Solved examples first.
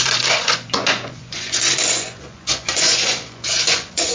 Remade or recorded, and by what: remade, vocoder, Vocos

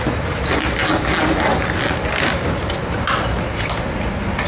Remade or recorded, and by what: recorded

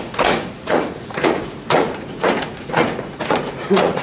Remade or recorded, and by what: remade, vocoder, Vocos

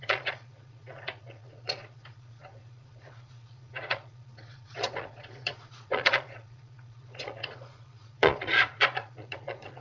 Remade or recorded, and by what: remade, vocoder, Vocos